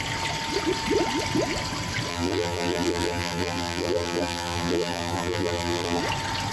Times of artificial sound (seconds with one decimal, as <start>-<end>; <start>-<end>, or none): 2.1-6.0